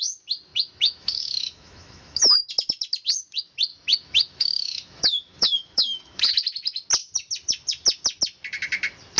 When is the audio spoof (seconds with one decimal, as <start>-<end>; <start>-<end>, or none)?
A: 0.5-2.5; 3.7-6.3